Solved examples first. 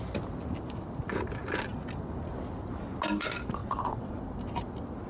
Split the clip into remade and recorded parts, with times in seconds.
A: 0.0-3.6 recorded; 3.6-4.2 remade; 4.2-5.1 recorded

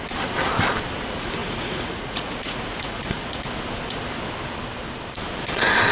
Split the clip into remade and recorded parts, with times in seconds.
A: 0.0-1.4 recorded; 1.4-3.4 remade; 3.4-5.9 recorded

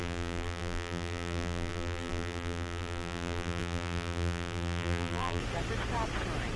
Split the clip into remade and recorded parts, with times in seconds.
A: 0.0-5.4 remade; 5.4-6.6 recorded

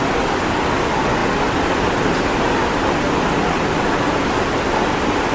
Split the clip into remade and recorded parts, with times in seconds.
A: 0.0-5.3 recorded

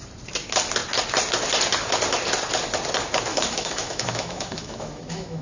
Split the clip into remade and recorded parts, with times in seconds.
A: 0.0-3.3 recorded; 3.3-5.4 remade

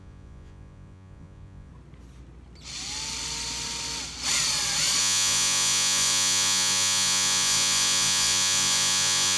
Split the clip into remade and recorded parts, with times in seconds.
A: 0.0-1.7 remade; 1.7-5.0 recorded; 5.0-9.4 remade